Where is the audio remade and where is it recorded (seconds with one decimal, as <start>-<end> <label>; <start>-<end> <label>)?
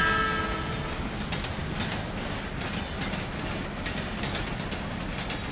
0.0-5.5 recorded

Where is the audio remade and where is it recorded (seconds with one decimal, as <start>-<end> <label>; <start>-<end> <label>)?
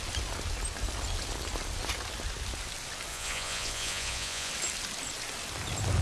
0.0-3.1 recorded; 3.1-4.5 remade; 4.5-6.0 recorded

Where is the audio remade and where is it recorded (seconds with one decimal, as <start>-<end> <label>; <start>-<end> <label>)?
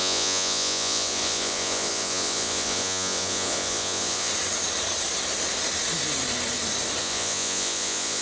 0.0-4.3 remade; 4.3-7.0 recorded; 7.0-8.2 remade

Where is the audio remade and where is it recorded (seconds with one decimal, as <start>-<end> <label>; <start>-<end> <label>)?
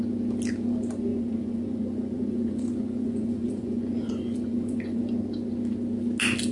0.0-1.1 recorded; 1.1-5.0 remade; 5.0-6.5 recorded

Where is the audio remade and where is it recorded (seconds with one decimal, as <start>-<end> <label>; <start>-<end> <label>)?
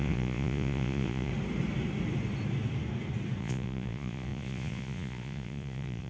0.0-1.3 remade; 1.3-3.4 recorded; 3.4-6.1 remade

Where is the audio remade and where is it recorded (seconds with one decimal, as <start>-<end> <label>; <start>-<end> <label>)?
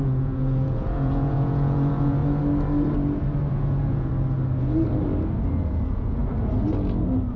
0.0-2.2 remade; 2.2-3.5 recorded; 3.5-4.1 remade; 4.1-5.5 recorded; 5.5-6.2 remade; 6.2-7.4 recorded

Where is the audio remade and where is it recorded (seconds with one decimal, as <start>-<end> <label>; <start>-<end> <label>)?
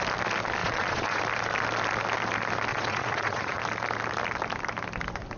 0.0-0.6 recorded; 0.6-1.2 remade; 1.2-2.7 recorded; 2.7-3.6 remade; 3.6-5.4 recorded